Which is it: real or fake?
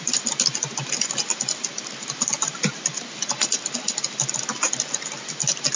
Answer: real